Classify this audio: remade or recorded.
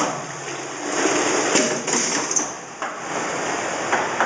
recorded